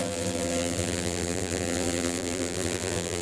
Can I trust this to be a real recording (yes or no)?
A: no